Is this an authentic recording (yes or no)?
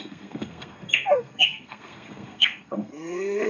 no